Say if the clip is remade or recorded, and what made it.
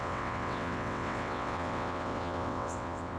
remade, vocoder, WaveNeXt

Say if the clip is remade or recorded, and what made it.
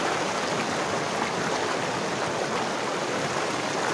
recorded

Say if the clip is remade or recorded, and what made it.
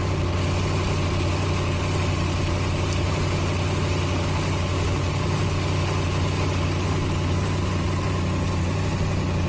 recorded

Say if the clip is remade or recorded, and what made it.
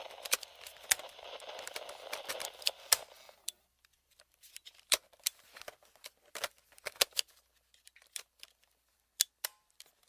remade, vocoder, BigVGAN v2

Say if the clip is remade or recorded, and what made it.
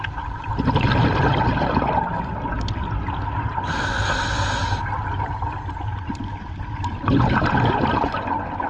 recorded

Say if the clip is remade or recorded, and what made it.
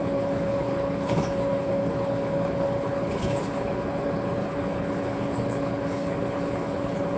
remade, codec, HILCodec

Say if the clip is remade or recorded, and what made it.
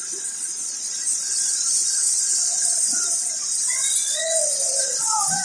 remade, vocoder, Vocos